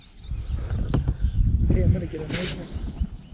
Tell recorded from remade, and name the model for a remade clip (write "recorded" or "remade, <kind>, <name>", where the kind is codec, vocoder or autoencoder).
recorded